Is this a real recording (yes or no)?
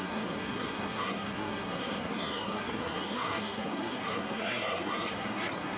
no